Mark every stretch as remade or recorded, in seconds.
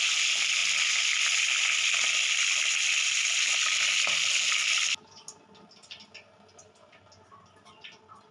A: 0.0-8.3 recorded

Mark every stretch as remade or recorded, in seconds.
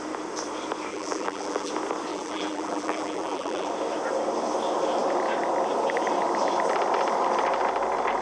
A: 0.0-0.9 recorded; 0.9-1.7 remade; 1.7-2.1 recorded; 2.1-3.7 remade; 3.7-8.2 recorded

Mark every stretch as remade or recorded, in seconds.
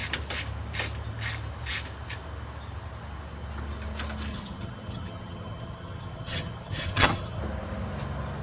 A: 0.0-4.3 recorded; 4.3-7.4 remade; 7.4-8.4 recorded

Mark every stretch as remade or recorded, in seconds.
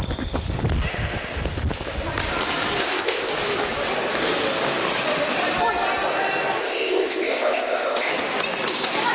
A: 0.0-2.8 recorded; 2.8-3.3 remade; 3.3-6.6 recorded; 6.6-8.1 remade; 8.1-9.1 recorded